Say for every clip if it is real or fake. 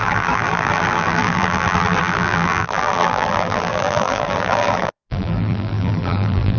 fake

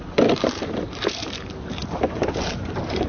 fake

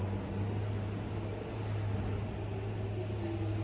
real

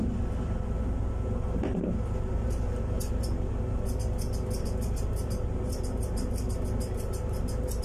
real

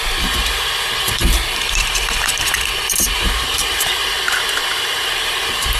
fake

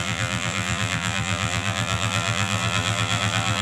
fake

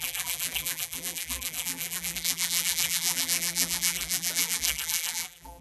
fake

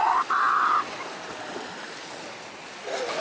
real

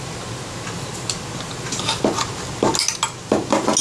real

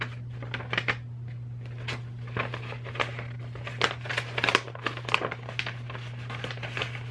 real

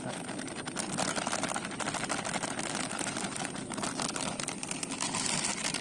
real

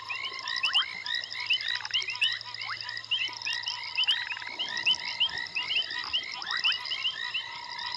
real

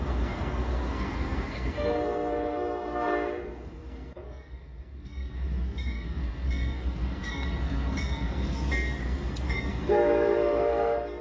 fake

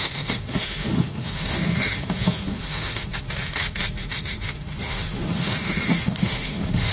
fake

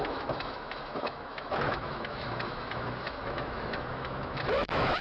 fake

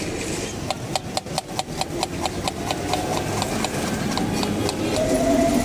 real